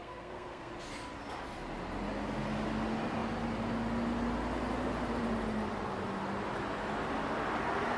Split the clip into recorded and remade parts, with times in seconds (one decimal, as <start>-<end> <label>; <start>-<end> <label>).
0.0-0.7 remade; 0.7-8.0 recorded